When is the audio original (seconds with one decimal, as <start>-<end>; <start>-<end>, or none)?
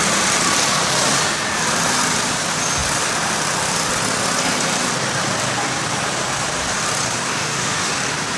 0.0-7.3; 7.9-8.4